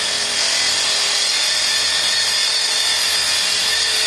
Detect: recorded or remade recorded